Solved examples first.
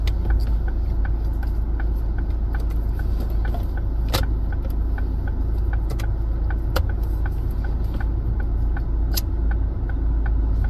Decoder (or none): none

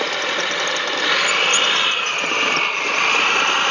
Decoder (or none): none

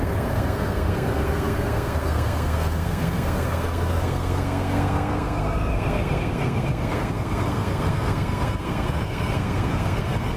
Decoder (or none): codec, SNAC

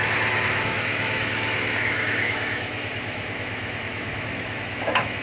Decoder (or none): autoencoder, DAC-VAE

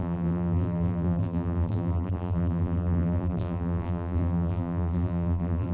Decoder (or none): vocoder, BigVGAN v2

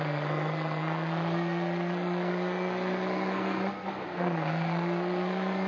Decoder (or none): codec, SNAC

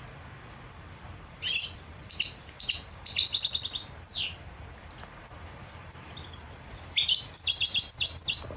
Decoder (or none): vocoder, BigVGAN v2